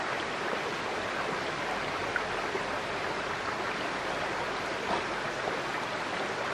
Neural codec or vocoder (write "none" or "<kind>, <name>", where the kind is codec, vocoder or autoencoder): vocoder, BigVGAN v2